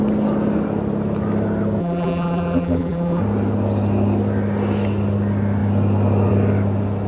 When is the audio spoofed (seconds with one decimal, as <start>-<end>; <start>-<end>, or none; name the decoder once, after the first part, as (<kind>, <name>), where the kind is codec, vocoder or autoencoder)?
1.8-3.2 (vocoder, BigVGAN v2)